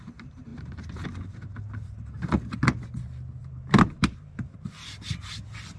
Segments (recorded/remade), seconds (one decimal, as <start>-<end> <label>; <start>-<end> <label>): 0.0-2.6 remade; 2.6-3.4 recorded; 3.4-5.8 remade

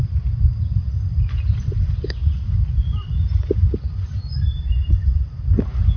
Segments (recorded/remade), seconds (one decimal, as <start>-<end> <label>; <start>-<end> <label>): 0.0-6.0 recorded

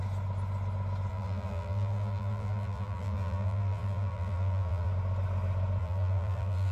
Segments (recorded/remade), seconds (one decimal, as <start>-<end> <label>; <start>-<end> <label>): 0.0-1.1 recorded; 1.1-4.9 remade; 4.9-5.8 recorded; 5.8-6.7 remade

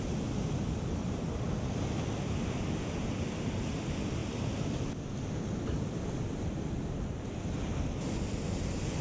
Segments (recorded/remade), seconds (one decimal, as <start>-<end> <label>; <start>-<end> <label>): 0.0-9.0 recorded